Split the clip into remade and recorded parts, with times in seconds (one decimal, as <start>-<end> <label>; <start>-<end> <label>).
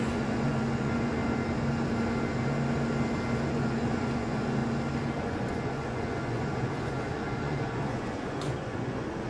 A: 0.0-1.2 remade; 1.2-3.5 recorded; 3.5-4.6 remade; 4.6-5.2 recorded; 5.2-9.3 remade